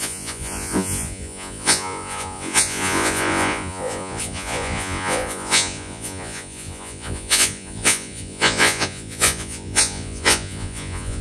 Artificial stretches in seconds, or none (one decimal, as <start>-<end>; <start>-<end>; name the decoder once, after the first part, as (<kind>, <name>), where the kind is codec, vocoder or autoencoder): 0.0-11.2 (vocoder, Vocos)